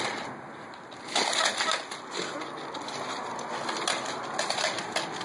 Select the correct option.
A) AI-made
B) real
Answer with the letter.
B